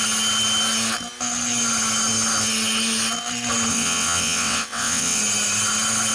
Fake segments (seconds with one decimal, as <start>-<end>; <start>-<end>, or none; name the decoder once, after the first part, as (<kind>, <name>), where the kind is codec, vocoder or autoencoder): 3.7-5.2 (vocoder, WaveNeXt)